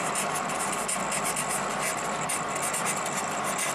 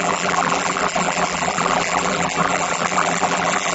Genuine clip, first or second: first